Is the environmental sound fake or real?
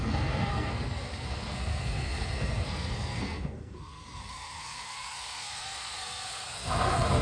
fake